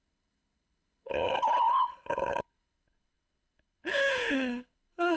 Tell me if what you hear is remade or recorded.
remade